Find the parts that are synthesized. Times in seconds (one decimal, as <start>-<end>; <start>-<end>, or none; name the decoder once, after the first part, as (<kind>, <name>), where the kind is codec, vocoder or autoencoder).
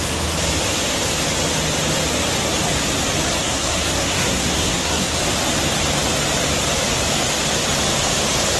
3.4-5.2 (codec, SNAC)